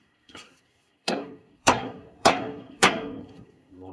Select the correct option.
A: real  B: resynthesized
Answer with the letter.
B